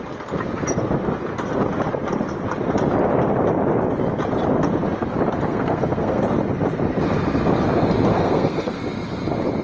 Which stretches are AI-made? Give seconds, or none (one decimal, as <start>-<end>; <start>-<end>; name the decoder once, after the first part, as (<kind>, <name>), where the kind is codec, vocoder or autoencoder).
5.5-6.2 (codec, SNAC); 8.1-8.8